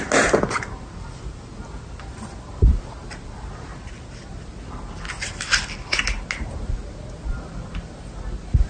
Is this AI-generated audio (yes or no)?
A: no